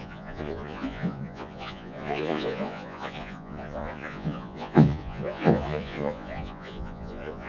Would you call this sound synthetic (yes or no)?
yes